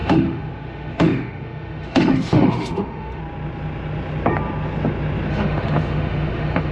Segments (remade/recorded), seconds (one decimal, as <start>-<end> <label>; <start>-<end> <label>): 0.0-3.2 remade; 3.2-5.3 recorded; 5.3-6.7 remade